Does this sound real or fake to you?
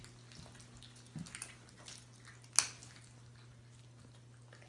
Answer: real